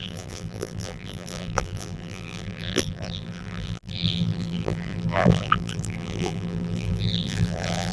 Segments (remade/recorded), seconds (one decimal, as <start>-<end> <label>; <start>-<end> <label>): 0.0-7.9 remade